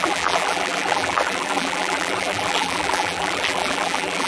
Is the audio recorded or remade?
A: remade